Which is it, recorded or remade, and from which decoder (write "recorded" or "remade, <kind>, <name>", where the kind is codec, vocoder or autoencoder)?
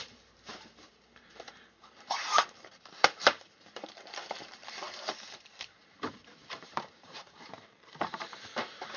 remade, vocoder, BigVGAN v2